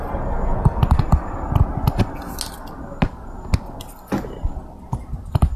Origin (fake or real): real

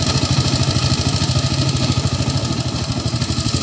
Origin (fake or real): fake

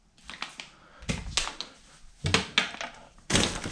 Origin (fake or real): real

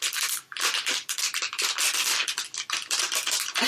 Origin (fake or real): real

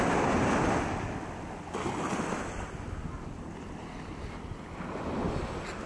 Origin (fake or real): real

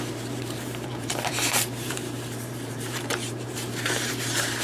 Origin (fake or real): fake